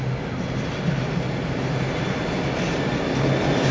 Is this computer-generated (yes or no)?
no